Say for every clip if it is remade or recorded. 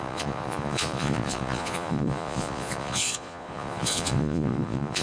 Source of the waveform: remade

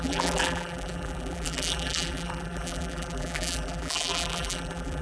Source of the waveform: remade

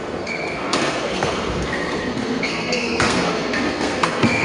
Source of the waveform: remade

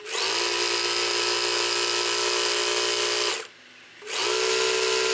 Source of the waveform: recorded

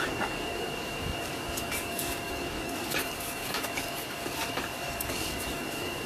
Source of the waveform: remade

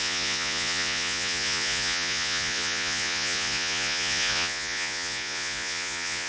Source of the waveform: remade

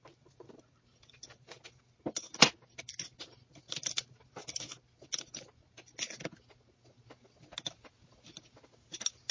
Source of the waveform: recorded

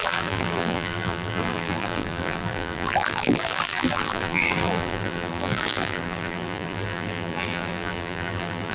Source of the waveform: remade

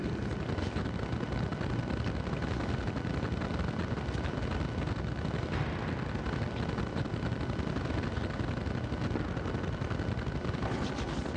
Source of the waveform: recorded